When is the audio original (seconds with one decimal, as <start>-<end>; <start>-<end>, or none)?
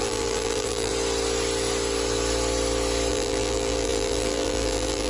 0.9-3.1